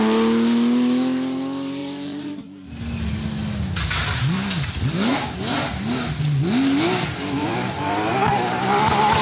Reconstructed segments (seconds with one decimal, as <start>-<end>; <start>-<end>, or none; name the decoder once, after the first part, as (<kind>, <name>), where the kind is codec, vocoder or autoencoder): 1.8-2.3 (vocoder, Vocos)